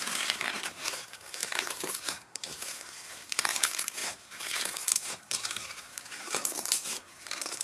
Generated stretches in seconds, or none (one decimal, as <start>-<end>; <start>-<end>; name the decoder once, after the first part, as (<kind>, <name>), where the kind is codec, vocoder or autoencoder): 0.0-7.6 (codec, SNAC)